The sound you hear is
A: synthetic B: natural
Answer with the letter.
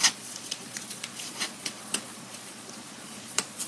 A